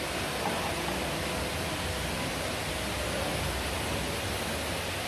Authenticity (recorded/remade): recorded